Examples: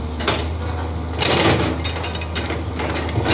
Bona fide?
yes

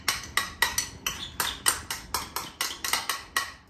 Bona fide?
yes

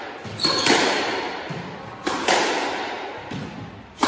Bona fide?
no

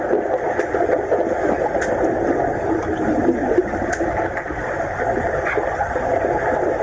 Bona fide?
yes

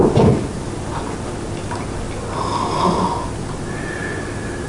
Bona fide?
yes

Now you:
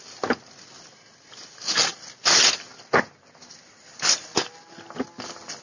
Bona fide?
yes